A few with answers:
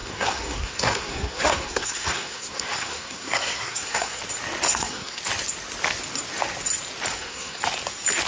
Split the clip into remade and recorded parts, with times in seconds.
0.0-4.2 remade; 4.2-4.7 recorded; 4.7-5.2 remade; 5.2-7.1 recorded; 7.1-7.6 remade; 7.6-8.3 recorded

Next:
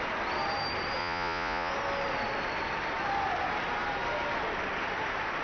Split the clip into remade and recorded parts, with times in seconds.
0.0-1.0 recorded; 1.0-1.7 remade; 1.7-5.4 recorded

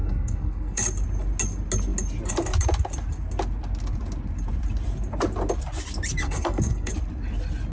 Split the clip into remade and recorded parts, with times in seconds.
0.0-0.8 remade; 0.8-6.2 recorded; 6.2-6.9 remade; 6.9-7.7 recorded

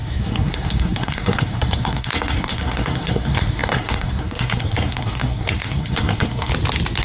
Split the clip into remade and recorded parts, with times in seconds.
0.0-6.5 remade; 6.5-7.0 recorded

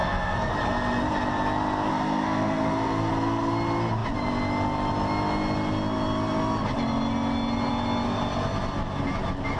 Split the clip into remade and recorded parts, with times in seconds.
0.0-0.5 remade; 0.5-1.9 recorded; 1.9-3.1 remade; 3.1-9.6 recorded

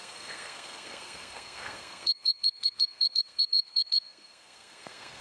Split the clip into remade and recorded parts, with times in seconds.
0.0-5.2 remade